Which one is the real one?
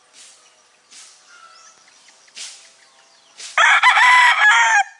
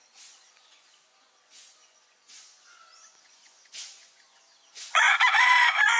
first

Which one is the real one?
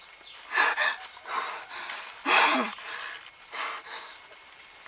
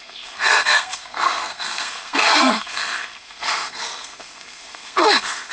first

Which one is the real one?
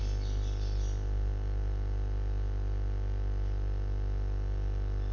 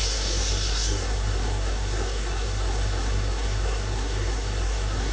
first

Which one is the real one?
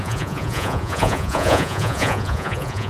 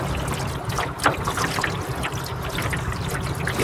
second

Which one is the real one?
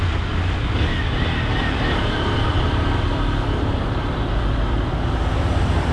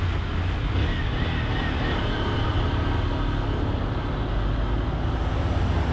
second